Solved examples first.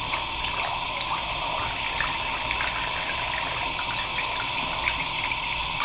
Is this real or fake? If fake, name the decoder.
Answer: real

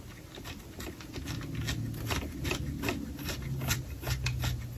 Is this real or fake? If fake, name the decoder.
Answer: real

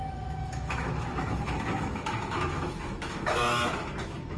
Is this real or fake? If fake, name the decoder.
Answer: fake, autoencoder, DAC-VAE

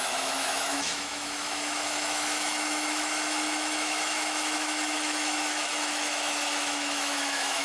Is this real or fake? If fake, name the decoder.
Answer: fake, autoencoder, DAC-VAE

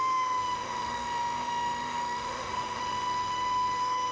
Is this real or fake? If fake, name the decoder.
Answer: fake, autoencoder, DAC-VAE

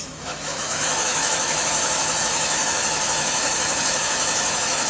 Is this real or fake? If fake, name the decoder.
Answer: fake, autoencoder, DAC-VAE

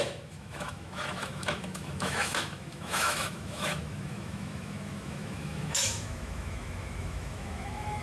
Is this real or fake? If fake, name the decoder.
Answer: fake, autoencoder, DAC-VAE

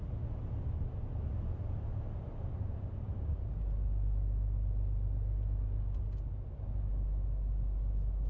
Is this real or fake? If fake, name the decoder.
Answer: real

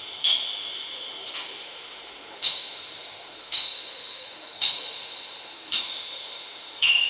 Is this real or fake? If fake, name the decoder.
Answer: fake, autoencoder, DAC-VAE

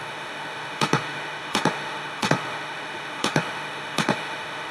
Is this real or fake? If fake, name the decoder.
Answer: fake, autoencoder, DAC-VAE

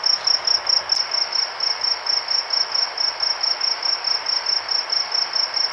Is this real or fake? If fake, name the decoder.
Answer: real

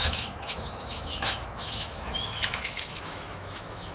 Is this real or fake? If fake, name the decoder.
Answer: fake, autoencoder, DAC-VAE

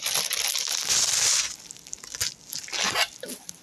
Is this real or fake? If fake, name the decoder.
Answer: real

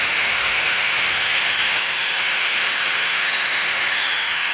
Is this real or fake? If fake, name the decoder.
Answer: fake, autoencoder, DAC-VAE